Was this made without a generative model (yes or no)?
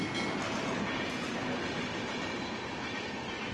yes